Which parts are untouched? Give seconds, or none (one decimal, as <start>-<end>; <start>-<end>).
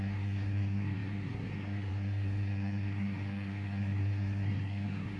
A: none